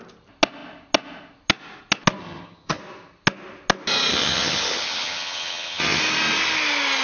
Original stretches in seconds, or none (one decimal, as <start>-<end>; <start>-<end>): 0.0-2.2; 2.8-4.1; 6.0-7.0